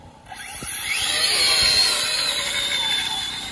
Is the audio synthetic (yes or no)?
no